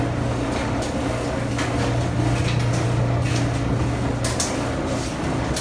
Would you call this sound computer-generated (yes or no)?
no